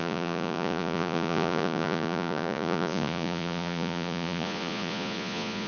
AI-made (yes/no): yes